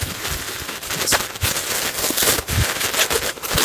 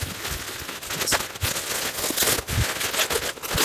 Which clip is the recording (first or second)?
second